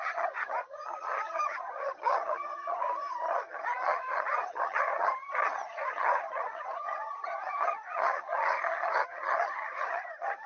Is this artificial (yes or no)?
yes